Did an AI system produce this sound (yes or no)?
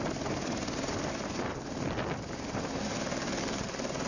no